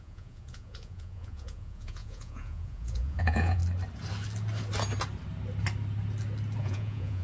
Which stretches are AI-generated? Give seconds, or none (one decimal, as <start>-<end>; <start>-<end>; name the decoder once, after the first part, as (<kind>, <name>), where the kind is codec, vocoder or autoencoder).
0.0-3.6 (vocoder, Vocos); 6.6-7.2